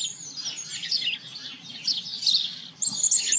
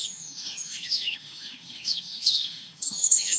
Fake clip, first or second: second